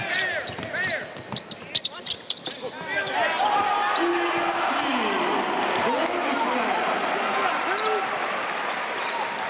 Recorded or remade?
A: recorded